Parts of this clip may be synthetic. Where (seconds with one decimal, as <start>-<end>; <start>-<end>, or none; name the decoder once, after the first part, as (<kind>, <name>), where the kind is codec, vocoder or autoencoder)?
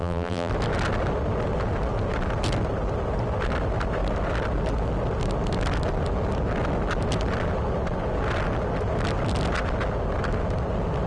0.0-0.5 (vocoder, BigVGAN v2)